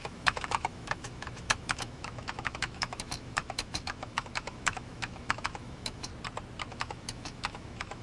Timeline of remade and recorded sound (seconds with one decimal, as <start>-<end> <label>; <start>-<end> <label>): 0.0-6.1 remade; 6.1-6.7 recorded; 6.7-8.0 remade